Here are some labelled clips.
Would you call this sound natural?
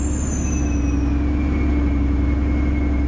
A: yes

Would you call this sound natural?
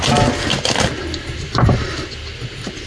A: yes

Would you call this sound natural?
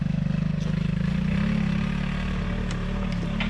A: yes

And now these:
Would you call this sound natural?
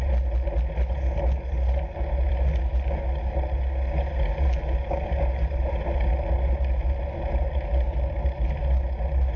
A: yes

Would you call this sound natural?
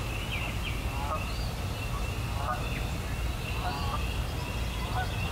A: yes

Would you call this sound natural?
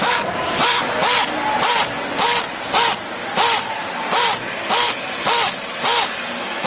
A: yes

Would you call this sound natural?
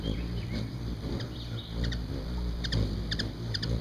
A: yes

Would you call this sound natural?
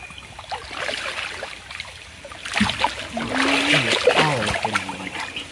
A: yes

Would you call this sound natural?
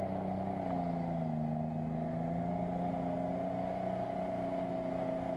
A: yes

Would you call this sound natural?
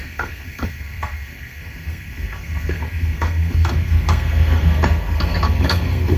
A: no